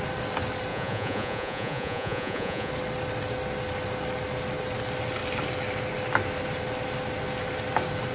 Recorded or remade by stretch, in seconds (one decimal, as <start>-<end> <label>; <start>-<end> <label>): 0.0-0.7 recorded; 0.7-2.7 remade; 2.7-8.1 recorded